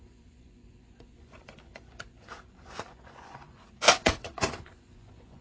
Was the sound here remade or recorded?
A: remade